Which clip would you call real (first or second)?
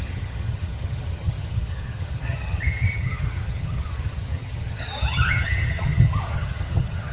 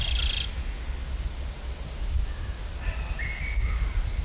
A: second